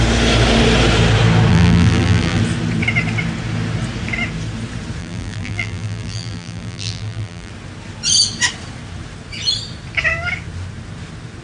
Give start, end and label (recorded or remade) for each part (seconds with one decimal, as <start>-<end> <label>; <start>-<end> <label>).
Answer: 0.0-1.5 recorded; 1.5-2.4 remade; 2.4-5.0 recorded; 5.0-7.5 remade; 7.5-11.4 recorded